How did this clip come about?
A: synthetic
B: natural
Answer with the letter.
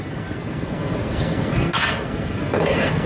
A